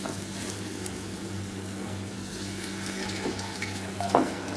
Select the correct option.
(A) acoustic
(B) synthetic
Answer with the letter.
B